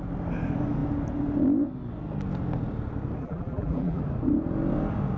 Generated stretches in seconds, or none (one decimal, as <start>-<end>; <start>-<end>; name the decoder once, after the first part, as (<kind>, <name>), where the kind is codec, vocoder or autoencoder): 3.2-4.0 (vocoder, BigVGAN v2)